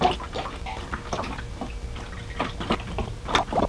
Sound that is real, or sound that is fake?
real